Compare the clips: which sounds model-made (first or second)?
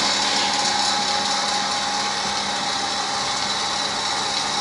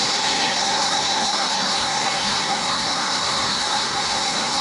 second